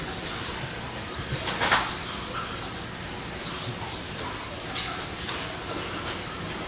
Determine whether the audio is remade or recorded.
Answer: recorded